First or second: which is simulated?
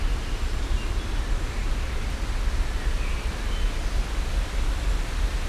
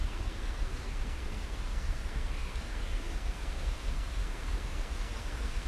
second